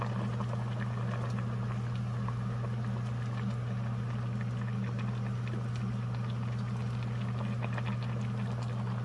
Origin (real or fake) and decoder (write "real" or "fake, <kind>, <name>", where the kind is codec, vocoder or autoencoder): real